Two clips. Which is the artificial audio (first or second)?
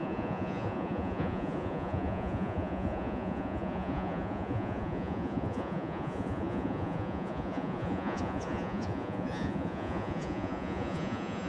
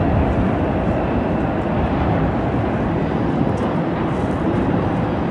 first